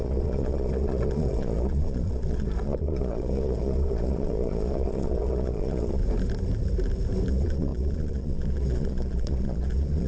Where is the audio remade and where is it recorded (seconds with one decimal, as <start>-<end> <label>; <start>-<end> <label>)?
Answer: 0.0-6.0 remade; 6.0-7.3 recorded; 7.3-10.1 remade